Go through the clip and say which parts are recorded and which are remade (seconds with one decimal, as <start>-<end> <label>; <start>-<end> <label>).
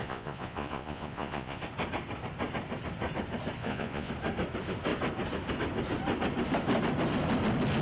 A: 0.0-1.6 remade; 1.6-3.6 recorded; 3.6-4.1 remade; 4.1-7.8 recorded